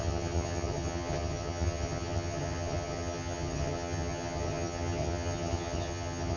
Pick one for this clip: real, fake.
fake